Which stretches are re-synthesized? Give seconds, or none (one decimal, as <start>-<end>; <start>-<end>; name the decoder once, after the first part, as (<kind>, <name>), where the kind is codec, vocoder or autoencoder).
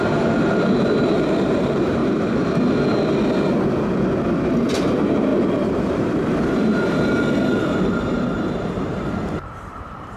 0.0-2.0 (vocoder, BigVGAN v2); 4.7-10.2